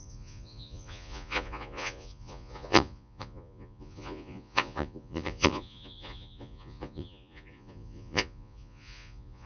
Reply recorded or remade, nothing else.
remade